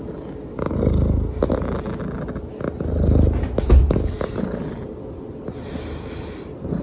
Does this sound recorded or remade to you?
recorded